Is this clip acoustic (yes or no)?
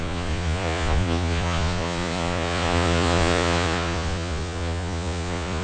no